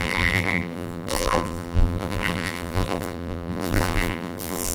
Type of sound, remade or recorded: remade